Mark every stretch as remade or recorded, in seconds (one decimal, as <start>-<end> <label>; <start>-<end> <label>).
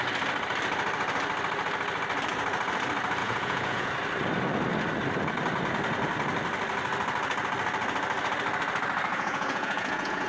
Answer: 0.0-3.2 recorded; 3.2-3.9 remade; 3.9-9.1 recorded; 9.1-10.3 remade